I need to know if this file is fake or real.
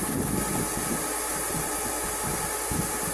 real